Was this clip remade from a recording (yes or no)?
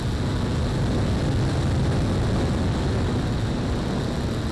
no